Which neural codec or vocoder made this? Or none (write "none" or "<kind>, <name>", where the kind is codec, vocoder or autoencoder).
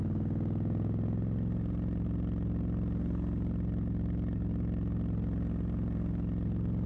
none